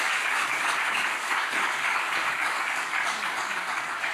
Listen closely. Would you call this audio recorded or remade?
remade